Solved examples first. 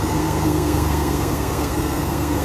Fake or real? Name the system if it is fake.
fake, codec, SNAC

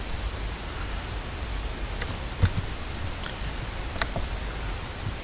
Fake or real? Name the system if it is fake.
real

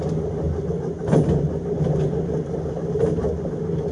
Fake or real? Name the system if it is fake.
real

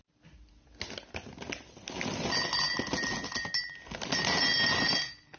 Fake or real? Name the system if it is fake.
real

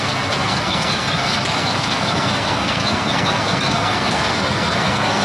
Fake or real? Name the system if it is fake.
fake, codec, SNAC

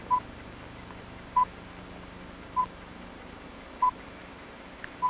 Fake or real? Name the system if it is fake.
real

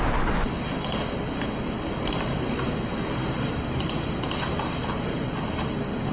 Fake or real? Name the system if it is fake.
real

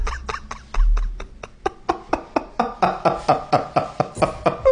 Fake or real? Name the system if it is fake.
real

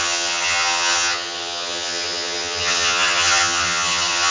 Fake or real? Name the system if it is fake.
fake, vocoder, HiFi-GAN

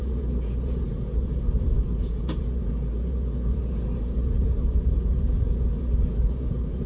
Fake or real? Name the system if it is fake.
fake, vocoder, Vocos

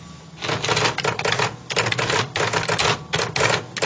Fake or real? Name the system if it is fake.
real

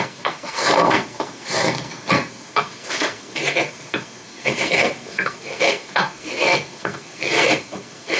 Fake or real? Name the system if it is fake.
fake, codec, SNAC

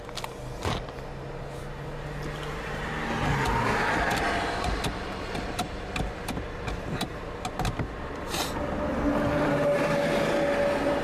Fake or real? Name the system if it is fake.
real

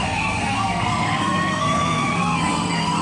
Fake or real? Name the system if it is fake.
fake, codec, SNAC